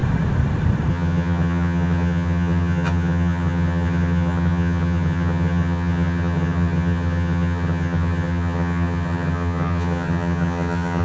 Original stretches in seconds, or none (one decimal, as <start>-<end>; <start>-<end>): 0.0-0.9